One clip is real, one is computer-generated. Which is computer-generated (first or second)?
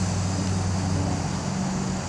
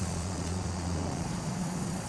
second